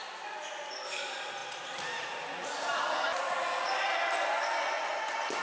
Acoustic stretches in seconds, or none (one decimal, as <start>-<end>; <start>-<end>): 0.0-5.4